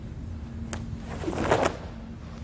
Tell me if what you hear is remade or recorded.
recorded